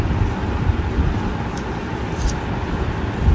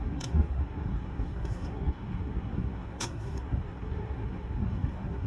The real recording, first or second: first